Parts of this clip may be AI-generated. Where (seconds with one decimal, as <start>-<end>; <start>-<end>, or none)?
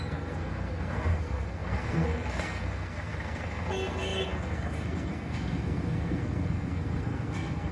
0.0-7.7